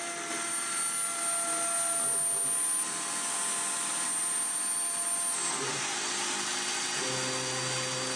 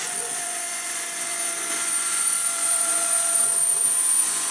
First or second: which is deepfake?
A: second